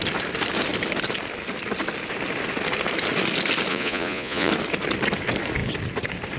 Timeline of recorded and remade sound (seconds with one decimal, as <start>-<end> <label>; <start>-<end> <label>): 0.0-3.7 recorded; 3.7-4.5 remade; 4.5-6.4 recorded